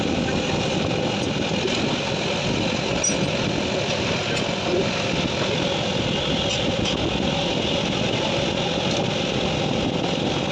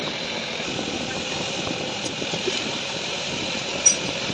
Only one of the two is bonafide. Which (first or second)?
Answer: first